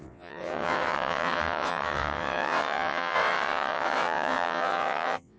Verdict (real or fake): fake